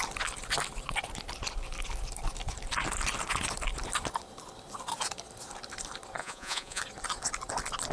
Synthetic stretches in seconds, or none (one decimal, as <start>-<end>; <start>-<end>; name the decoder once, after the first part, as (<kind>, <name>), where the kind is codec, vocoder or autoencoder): 6.2-6.8 (vocoder, Vocos)